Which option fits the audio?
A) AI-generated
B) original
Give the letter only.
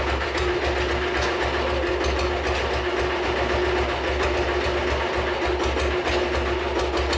B